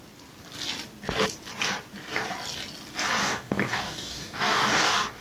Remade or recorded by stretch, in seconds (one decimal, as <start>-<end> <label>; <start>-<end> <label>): 0.0-3.2 recorded; 3.2-5.2 remade